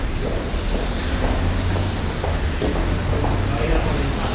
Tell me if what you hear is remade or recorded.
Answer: recorded